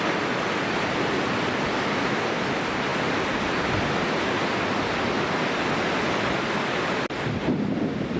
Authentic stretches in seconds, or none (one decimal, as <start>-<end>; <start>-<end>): 0.0-8.2

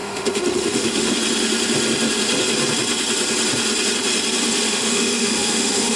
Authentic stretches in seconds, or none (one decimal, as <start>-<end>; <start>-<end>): 1.1-4.7

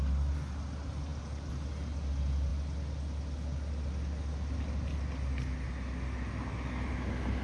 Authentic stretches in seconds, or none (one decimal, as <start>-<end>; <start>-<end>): 0.0-7.4

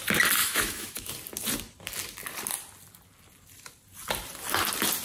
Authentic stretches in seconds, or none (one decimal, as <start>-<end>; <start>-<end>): 0.0-0.4; 1.1-5.0

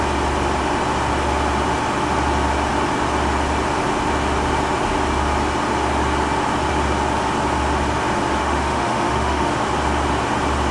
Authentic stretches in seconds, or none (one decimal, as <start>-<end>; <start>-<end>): 0.0-8.4; 9.5-10.7

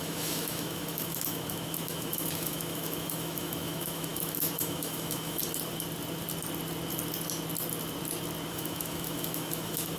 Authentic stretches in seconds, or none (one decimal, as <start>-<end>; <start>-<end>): 5.4-8.5

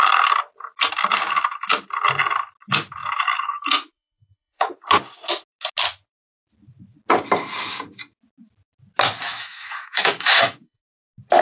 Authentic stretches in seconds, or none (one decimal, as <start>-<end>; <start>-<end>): 0.0-3.0; 4.7-9.3; 10.8-11.4

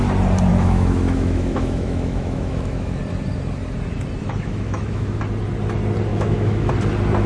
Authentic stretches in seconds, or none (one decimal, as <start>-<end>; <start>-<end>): 0.0-0.5; 3.0-4.2; 5.2-6.1; 6.7-7.3